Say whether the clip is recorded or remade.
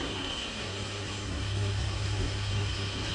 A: remade